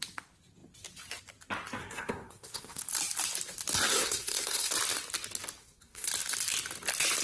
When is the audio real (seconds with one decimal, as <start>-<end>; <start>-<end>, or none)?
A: 0.0-1.8; 2.8-3.9; 4.7-5.6; 6.1-7.2